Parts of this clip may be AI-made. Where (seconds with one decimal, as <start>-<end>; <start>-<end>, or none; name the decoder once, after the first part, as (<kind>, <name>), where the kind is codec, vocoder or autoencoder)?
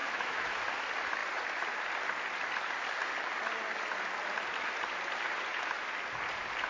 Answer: 0.0-0.6 (autoencoder, DAC-VAE)